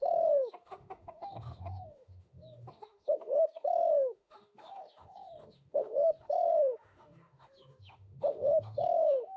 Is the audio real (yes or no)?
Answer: no